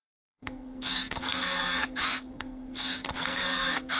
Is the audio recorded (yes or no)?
no